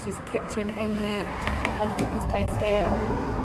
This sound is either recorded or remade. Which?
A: remade